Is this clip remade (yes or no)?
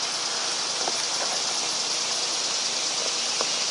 no